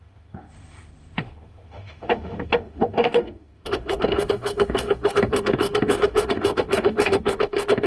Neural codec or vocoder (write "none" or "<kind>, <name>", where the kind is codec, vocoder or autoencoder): autoencoder, DAC-VAE